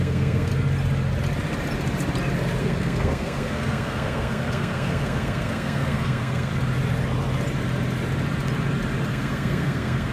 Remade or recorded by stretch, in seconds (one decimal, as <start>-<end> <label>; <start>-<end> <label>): 0.0-0.5 remade; 0.5-2.6 recorded; 2.6-6.5 remade; 6.5-9.1 recorded; 9.1-10.1 remade